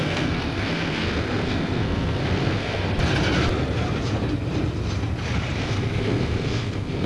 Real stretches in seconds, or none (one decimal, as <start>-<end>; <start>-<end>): 2.8-5.6